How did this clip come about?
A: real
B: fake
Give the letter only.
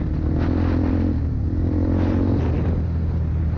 A